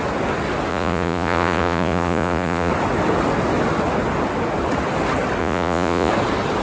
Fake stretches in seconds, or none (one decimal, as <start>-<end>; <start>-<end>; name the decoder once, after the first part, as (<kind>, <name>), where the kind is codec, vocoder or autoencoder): 0.7-2.7 (vocoder, Vocos); 5.4-6.1